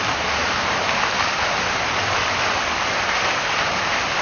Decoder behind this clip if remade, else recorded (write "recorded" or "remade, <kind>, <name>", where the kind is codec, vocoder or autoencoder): recorded